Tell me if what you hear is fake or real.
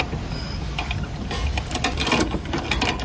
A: real